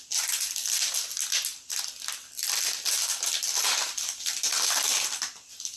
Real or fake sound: real